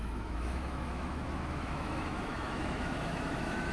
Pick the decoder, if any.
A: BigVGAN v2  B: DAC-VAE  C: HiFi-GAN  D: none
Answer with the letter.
B